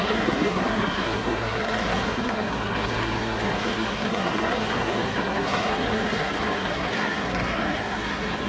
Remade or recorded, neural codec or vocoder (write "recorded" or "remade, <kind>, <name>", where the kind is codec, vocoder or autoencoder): remade, codec, SNAC